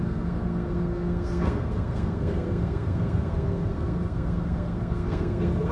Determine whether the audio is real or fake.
fake